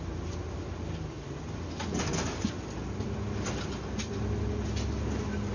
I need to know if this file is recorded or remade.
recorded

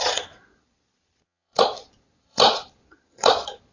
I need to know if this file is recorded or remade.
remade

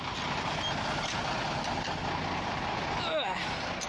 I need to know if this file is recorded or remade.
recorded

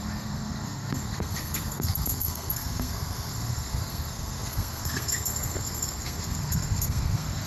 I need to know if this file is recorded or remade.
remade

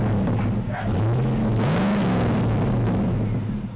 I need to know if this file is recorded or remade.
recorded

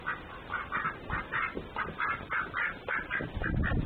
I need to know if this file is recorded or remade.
recorded